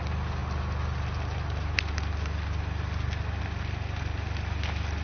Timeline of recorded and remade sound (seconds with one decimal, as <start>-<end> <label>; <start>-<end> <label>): 0.0-5.0 recorded

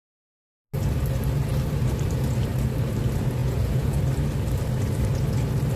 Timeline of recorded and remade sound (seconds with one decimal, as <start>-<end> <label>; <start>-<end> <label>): 0.0-3.4 recorded; 3.4-4.0 remade; 4.0-5.8 recorded